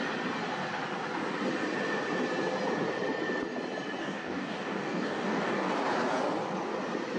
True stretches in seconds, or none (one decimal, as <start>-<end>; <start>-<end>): 0.0-4.0; 5.7-7.2